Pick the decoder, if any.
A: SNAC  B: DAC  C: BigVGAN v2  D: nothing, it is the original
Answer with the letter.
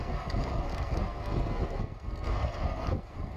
A